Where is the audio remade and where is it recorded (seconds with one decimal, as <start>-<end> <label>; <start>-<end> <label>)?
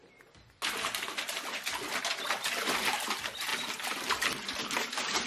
0.0-5.3 recorded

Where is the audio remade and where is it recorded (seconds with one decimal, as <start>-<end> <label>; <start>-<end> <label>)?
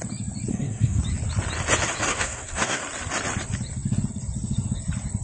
0.0-0.5 recorded; 0.5-1.0 remade; 1.0-2.1 recorded; 2.1-2.8 remade; 2.8-5.2 recorded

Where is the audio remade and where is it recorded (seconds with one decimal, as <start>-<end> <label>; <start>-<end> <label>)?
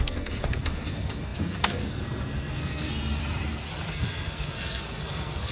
0.0-3.2 remade; 3.2-3.9 recorded; 3.9-5.5 remade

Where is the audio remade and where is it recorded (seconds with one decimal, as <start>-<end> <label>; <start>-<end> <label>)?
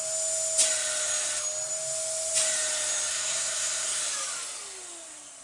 0.0-3.1 recorded; 3.1-4.0 remade; 4.0-5.4 recorded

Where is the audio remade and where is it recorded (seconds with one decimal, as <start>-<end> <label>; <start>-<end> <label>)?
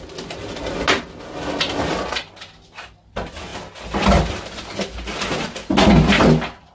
0.0-6.7 recorded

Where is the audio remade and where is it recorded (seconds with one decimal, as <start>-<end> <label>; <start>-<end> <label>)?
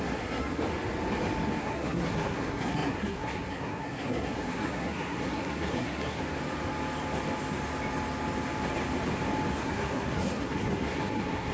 0.0-0.6 remade; 0.6-1.6 recorded; 1.6-6.2 remade; 6.2-9.6 recorded; 9.6-11.5 remade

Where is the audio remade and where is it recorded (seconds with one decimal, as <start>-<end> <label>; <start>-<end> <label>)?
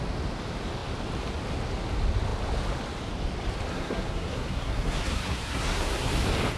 0.0-3.7 recorded; 3.7-6.1 remade; 6.1-6.6 recorded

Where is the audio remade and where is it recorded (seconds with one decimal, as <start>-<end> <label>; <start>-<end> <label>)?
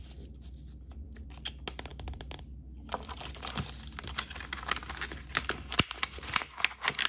0.0-7.1 recorded